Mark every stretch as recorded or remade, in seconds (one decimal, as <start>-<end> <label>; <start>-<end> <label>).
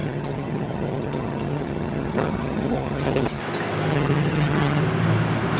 0.0-3.4 remade; 3.4-3.9 recorded; 3.9-4.8 remade; 4.8-5.6 recorded